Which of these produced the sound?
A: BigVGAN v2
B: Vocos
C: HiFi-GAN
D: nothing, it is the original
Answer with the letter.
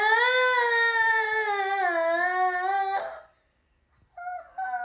D